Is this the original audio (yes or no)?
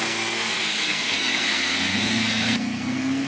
no